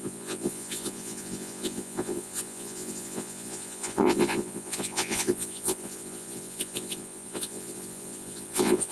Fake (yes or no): yes